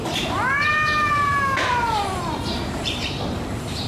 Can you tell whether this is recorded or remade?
remade